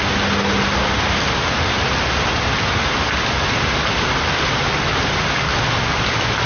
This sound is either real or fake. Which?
real